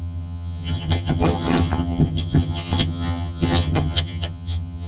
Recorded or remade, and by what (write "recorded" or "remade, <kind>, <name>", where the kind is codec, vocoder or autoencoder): remade, vocoder, HiFi-GAN